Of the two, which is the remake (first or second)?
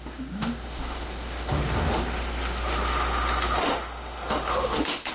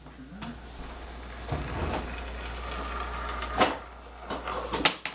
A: first